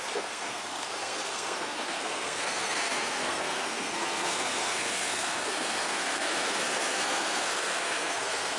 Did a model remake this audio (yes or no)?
yes